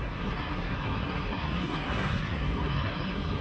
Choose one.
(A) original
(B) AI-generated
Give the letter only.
B